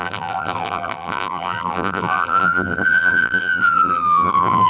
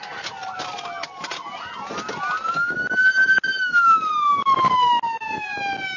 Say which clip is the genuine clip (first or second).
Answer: second